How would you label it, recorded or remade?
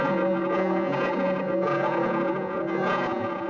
remade